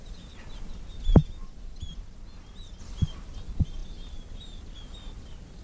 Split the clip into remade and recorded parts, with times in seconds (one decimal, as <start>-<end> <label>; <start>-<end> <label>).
0.0-5.6 recorded